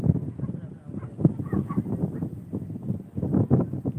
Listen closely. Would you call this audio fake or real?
real